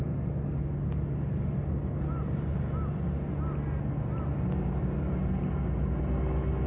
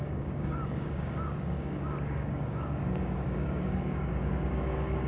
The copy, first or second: second